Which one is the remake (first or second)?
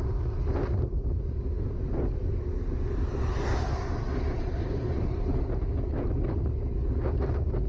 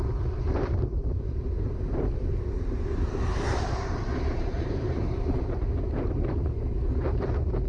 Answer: second